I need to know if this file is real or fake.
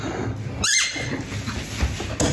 real